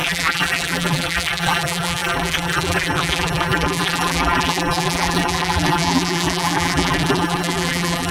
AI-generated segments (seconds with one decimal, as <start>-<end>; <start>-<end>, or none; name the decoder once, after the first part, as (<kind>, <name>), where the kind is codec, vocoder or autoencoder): 0.0-8.1 (vocoder, BigVGAN v2)